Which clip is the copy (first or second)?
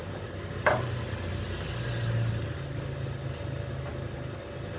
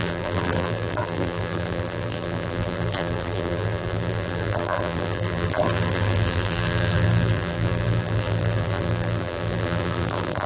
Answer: second